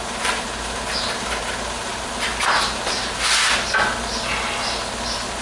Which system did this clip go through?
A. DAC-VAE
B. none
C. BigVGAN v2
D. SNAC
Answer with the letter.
B